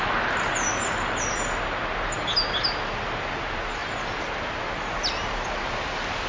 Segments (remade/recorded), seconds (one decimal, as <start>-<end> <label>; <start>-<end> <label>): 0.0-6.3 recorded